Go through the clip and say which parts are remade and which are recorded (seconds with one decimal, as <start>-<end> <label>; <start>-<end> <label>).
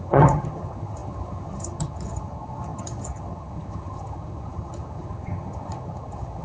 0.0-6.4 remade